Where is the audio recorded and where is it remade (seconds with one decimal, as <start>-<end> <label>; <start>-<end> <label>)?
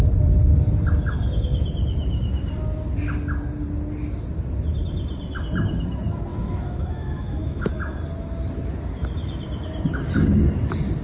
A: 0.0-6.3 recorded; 6.3-7.7 remade; 7.7-11.0 recorded